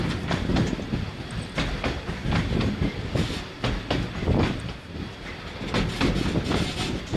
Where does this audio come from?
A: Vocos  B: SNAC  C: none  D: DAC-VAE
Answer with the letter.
C